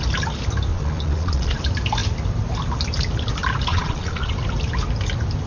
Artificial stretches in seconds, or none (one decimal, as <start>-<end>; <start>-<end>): 0.7-1.6; 3.7-4.3